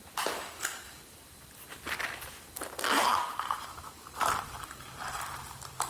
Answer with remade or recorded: recorded